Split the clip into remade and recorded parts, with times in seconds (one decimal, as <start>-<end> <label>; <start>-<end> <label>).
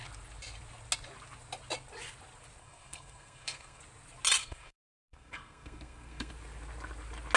0.0-2.6 recorded; 2.6-3.8 remade; 3.8-4.4 recorded; 4.4-6.3 remade; 6.3-7.4 recorded